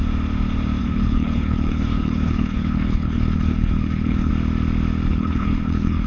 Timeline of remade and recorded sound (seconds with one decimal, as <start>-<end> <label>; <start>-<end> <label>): 0.0-0.8 recorded; 0.8-4.3 remade; 4.3-5.1 recorded; 5.1-6.1 remade